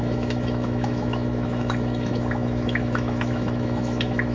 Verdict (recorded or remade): remade